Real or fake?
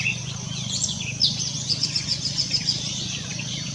fake